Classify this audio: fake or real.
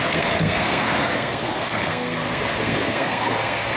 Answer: fake